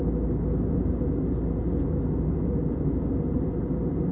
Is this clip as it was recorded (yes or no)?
yes